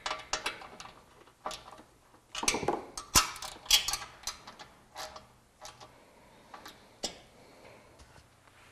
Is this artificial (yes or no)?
no